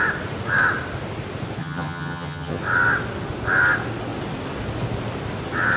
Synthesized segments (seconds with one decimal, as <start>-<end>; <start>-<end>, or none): 1.6-2.6